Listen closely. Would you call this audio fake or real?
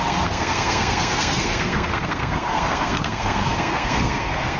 fake